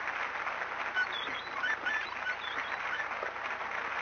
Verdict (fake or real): real